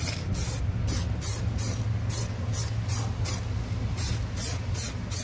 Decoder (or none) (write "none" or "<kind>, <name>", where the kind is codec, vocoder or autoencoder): none